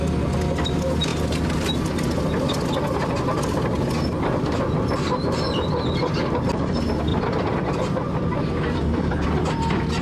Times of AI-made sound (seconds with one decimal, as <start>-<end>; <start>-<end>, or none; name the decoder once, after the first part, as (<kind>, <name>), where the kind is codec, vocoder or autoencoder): 7.1-9.6 (vocoder, BigVGAN v2)